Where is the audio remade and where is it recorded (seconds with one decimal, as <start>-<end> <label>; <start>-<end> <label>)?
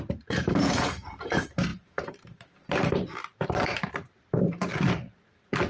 0.0-4.7 remade; 4.7-5.7 recorded